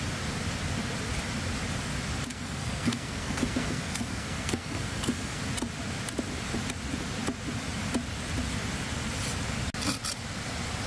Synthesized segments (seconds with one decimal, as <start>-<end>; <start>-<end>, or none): 2.3-5.4